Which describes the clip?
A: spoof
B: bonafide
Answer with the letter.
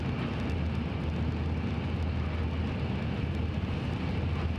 B